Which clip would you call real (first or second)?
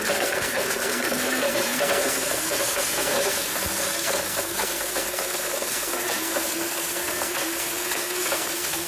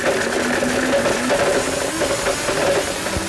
second